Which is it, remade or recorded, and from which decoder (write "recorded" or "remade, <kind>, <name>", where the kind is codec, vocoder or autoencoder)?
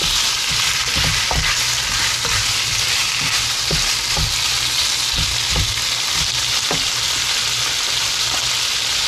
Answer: recorded